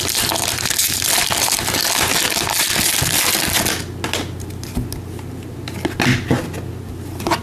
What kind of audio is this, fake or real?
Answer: real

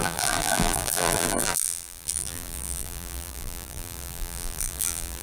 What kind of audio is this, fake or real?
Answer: fake